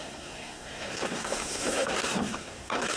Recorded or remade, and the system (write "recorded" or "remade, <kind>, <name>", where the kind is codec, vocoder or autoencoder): remade, codec, SNAC